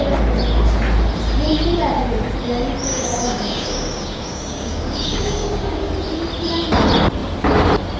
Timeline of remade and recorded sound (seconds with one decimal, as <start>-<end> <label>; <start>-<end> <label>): 0.0-2.9 recorded; 2.9-5.9 remade; 5.9-8.0 recorded